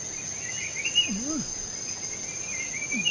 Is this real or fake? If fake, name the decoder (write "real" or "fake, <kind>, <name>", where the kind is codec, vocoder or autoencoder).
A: real